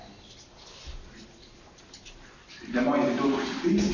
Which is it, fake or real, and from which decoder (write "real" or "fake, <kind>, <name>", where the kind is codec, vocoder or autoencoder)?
real